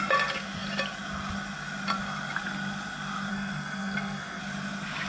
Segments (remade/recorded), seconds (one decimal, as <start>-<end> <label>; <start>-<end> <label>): 0.0-3.3 recorded; 3.3-4.4 remade; 4.4-5.1 recorded